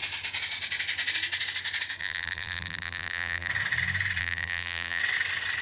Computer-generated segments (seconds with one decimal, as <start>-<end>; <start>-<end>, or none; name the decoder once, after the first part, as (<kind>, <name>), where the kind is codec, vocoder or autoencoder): 2.0-3.5 (vocoder, BigVGAN v2); 4.2-5.0

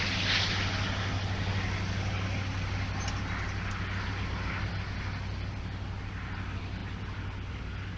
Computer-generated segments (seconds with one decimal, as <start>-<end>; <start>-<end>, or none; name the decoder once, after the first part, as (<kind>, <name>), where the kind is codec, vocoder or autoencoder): none

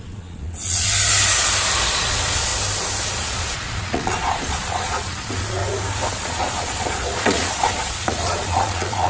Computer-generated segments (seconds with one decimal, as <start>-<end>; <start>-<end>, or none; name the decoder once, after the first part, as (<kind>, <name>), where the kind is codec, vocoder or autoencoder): 0.0-0.9 (vocoder, Vocos); 1.9-2.5; 3.1-5.6; 6.1-9.1

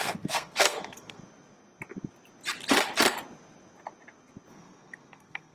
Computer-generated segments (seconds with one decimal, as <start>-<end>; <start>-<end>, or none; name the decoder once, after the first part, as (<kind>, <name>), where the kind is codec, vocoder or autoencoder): 0.0-1.2 (codec, SNAC); 4.5-5.5

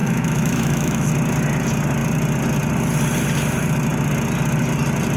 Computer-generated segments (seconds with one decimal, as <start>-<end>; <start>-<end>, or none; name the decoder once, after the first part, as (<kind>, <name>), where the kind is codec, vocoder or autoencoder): 0.0-1.1 (autoencoder, DAC-VAE)